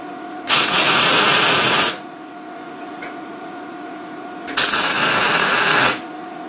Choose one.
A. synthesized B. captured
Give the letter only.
A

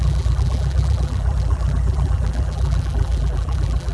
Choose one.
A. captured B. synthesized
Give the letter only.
B